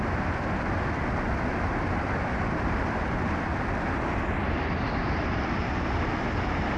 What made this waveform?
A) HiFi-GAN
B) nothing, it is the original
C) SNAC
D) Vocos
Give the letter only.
B